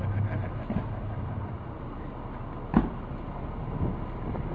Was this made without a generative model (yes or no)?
yes